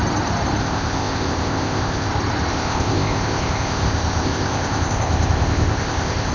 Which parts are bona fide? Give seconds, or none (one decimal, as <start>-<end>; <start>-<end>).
0.0-0.6; 2.1-2.5